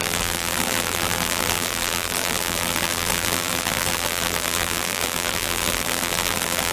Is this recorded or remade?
remade